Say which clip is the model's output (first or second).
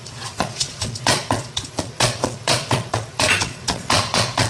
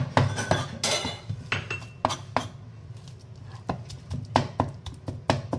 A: first